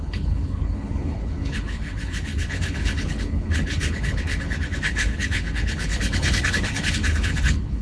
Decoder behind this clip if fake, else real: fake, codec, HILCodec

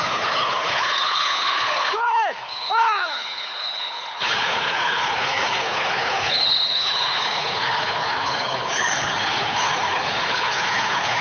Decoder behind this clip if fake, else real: fake, codec, HILCodec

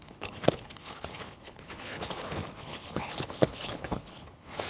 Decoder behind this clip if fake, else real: fake, codec, HILCodec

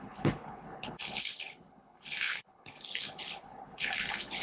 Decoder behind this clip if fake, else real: fake, codec, HILCodec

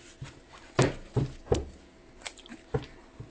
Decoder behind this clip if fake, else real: real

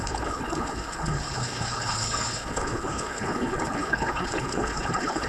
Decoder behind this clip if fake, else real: fake, codec, HILCodec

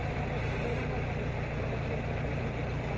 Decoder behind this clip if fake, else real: real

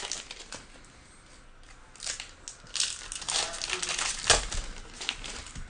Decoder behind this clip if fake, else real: real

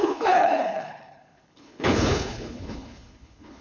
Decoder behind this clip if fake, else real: fake, codec, HILCodec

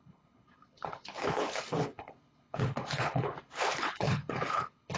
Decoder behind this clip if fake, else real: fake, codec, HILCodec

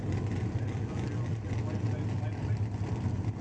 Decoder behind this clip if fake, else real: real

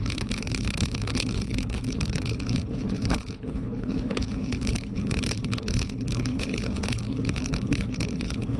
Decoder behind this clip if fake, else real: fake, codec, HILCodec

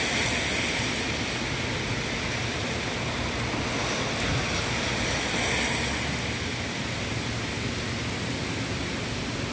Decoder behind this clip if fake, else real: real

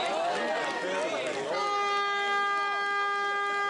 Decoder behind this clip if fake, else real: real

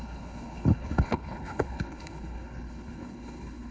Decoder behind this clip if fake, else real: fake, codec, HILCodec